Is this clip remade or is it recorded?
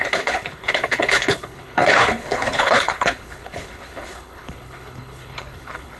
remade